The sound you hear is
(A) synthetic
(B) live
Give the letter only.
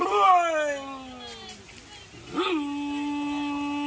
B